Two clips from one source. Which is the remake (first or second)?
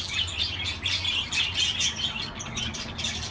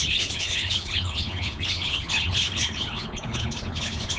second